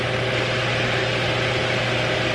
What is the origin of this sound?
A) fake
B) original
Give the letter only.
B